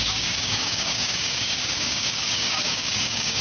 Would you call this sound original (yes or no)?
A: no